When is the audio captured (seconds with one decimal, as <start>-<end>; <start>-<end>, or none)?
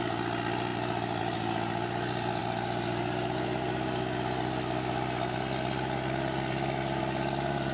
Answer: 0.0-7.7